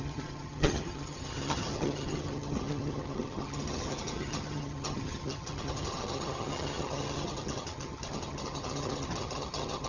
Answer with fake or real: fake